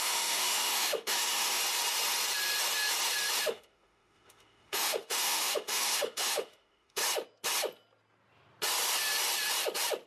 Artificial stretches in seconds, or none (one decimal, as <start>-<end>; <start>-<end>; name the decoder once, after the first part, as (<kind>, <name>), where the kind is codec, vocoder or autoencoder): 0.0-1.6 (autoencoder, DAC-VAE); 3.4-7.0